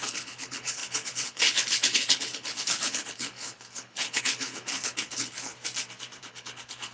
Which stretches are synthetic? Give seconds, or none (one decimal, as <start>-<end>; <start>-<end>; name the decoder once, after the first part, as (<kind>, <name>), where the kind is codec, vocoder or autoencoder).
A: 0.0-5.5 (codec, HILCodec); 6.2-6.9